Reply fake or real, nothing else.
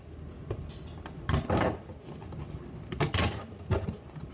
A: real